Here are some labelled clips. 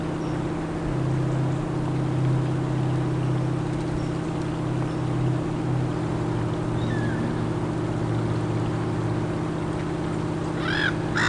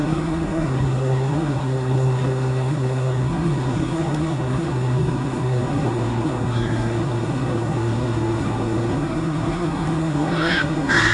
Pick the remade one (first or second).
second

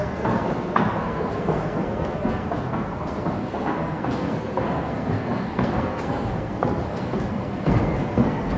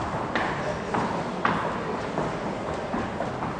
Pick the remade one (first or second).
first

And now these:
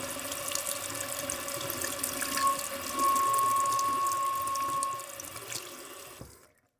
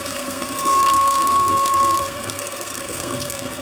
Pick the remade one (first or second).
second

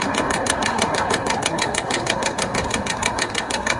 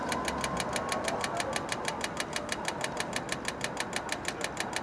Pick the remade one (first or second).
first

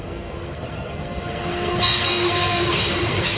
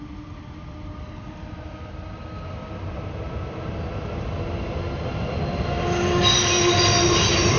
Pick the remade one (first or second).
first